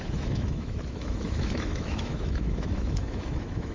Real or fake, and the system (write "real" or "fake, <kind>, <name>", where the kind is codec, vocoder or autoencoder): fake, autoencoder, DAC-VAE